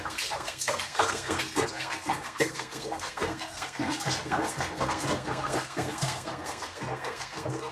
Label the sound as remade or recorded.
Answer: remade